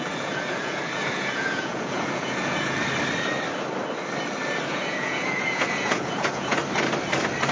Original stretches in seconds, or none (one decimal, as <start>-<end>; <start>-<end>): 2.8-4.7; 6.6-7.5